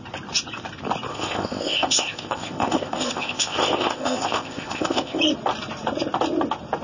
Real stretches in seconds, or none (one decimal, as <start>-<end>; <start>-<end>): 0.0-1.1; 5.2-6.8